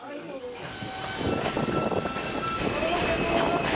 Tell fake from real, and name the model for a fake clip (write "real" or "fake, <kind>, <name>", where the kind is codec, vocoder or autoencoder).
real